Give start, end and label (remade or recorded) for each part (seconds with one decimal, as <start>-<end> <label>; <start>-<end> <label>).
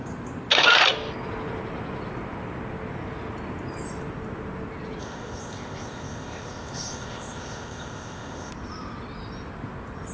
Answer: 0.0-5.0 recorded; 5.0-8.5 remade; 8.5-10.1 recorded